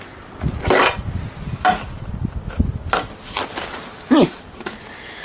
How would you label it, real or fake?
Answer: real